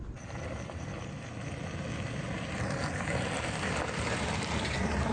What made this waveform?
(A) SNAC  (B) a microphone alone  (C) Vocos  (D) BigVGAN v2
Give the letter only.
B